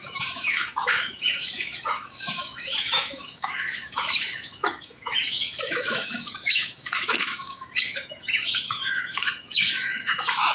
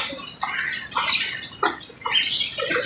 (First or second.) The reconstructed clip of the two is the first